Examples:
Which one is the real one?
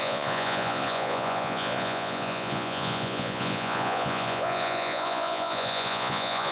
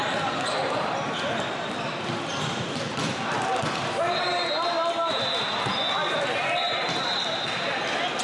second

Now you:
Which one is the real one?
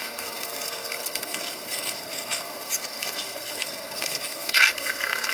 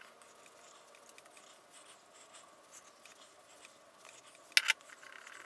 second